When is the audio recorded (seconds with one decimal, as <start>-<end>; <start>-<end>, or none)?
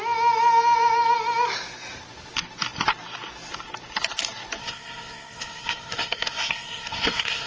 0.0-4.6